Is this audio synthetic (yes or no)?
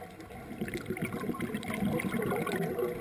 no